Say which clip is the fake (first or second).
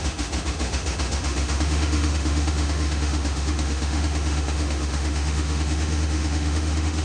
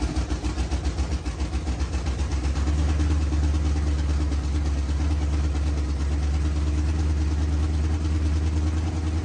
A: first